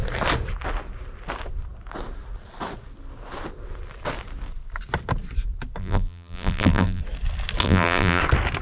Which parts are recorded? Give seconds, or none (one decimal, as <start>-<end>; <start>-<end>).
0.0-5.8; 7.0-7.6; 8.2-8.6